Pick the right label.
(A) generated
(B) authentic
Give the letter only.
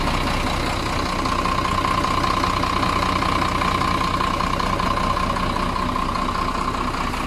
B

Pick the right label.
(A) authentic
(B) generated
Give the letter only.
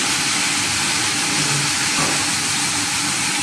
A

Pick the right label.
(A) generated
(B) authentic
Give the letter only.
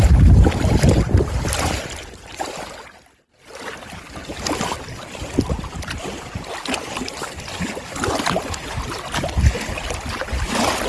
B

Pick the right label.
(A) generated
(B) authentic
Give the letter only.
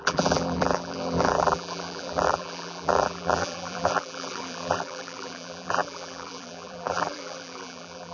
A